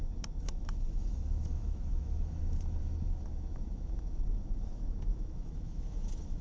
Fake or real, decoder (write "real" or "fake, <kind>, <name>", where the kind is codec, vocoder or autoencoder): fake, autoencoder, DAC-VAE